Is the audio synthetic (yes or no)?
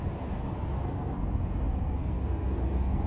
yes